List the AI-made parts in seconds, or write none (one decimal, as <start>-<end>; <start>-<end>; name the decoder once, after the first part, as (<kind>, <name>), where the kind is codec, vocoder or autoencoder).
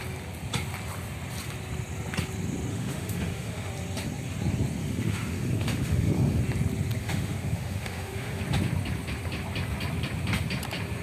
2.7-3.7 (autoencoder, DAC-VAE); 4.8-6.4; 7.0-8.4